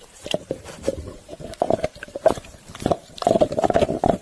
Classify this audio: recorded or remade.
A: remade